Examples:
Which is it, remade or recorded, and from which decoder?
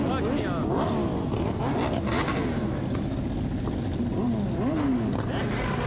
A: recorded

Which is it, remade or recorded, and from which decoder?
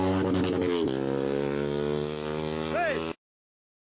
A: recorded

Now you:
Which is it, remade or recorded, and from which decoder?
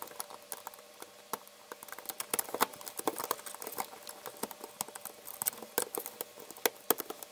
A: recorded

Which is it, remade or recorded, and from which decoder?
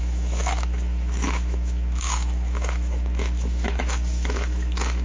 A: remade, autoencoder, DAC-VAE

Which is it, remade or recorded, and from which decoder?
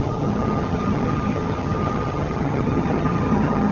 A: remade, vocoder, HiFi-GAN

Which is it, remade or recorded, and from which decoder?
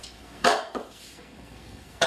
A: remade, codec, SNAC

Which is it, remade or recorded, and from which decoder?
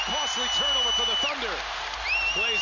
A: recorded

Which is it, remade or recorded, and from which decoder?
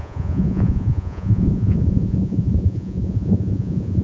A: remade, vocoder, Vocos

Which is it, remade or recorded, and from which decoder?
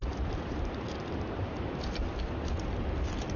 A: recorded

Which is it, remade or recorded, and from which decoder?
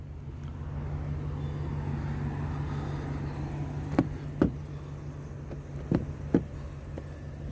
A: recorded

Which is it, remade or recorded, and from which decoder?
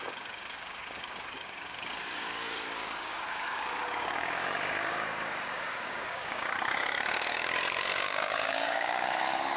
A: remade, codec, DAC